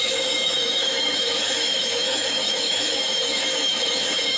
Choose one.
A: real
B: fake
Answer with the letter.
B